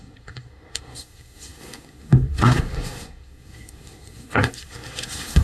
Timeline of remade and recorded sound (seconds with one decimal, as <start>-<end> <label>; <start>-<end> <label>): 0.0-5.4 remade